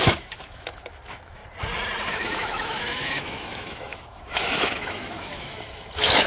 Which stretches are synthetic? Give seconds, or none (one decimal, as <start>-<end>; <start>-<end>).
0.0-1.4; 2.1-6.3